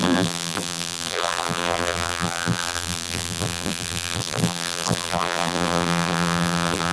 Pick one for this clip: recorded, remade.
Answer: remade